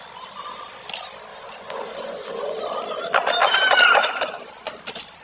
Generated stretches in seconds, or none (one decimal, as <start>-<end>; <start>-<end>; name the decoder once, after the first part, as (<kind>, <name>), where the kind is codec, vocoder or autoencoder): 1.3-2.6 (vocoder, Vocos); 4.0-4.5